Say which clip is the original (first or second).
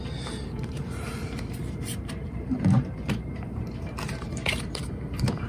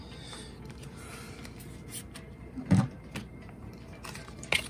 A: second